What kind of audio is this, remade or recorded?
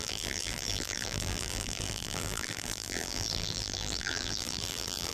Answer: remade